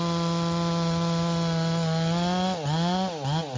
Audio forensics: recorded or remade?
recorded